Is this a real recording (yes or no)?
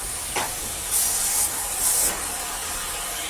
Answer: no